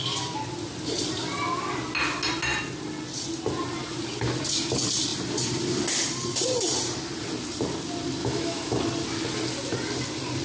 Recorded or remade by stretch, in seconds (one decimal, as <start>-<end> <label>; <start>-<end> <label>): 0.0-8.2 recorded; 8.2-8.8 remade; 8.8-10.4 recorded